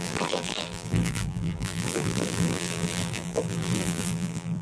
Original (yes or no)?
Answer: no